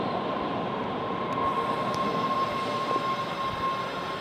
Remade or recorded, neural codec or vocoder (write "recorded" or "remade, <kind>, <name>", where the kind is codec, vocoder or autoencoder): recorded